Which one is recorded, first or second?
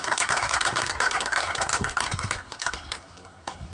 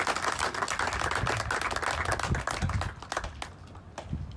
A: second